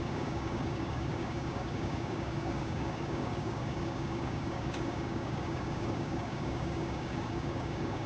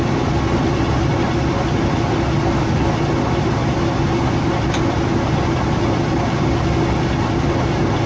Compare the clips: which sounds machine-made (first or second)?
first